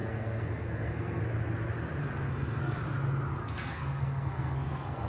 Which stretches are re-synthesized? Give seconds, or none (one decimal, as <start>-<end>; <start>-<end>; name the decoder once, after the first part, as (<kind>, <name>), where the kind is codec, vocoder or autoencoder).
0.0-1.2 (codec, SNAC); 2.0-2.8; 3.4-5.1